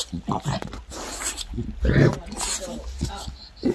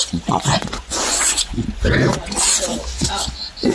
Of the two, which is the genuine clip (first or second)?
first